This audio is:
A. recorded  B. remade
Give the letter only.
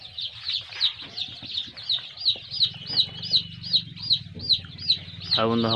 A